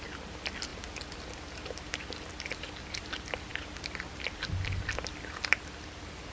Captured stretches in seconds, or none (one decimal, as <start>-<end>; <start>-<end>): 0.0-6.3